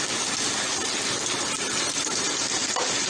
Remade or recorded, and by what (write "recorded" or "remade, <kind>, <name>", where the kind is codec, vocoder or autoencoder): recorded